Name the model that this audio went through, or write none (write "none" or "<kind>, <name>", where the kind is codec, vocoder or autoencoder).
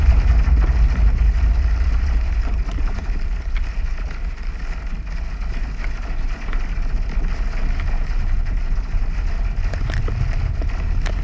none